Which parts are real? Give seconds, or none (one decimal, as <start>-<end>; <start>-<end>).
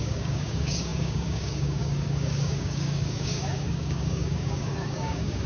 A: none